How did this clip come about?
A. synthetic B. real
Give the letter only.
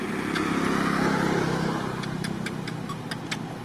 B